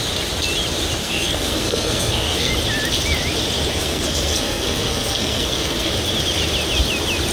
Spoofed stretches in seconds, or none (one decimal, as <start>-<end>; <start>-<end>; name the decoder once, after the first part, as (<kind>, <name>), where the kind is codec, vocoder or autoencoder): 1.0-2.5 (codec, SNAC); 3.7-5.9